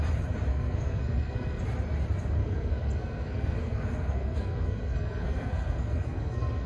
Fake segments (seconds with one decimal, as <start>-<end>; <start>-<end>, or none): 0.5-1.6; 2.4-6.7